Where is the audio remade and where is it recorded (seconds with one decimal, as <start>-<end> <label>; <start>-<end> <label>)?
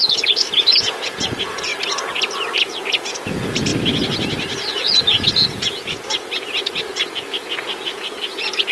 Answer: 0.0-1.7 remade; 1.7-2.6 recorded; 2.6-3.7 remade; 3.7-4.7 recorded; 4.7-8.7 remade